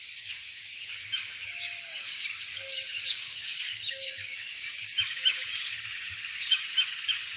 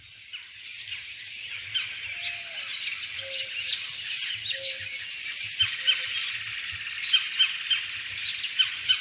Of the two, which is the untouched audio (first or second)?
second